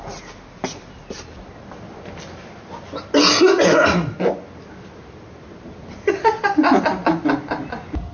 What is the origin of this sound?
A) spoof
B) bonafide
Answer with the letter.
B